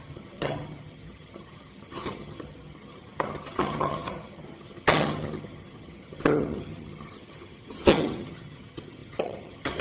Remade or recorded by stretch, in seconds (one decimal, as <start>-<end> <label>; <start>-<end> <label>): 0.0-9.8 remade